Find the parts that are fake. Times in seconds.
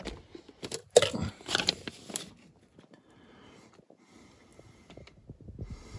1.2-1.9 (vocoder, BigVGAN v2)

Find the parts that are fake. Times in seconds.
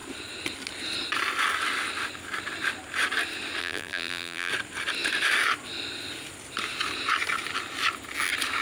3.6-4.5 (vocoder, BigVGAN v2)